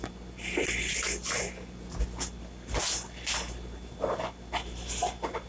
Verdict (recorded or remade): recorded